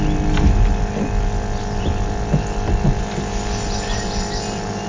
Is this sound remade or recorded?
recorded